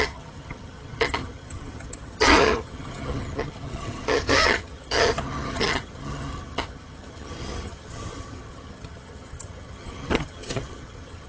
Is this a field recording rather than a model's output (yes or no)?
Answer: no